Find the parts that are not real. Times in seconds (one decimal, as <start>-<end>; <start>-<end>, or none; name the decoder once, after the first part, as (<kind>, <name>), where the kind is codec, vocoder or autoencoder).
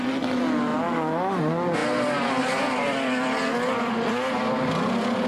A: 1.8-5.3 (vocoder, BigVGAN v2)